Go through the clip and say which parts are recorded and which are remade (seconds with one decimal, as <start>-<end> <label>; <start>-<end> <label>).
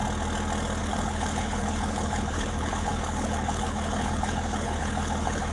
0.0-0.8 recorded; 0.8-5.5 remade